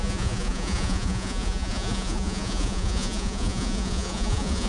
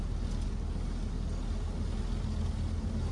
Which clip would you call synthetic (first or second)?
first